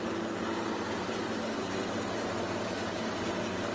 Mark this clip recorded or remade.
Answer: recorded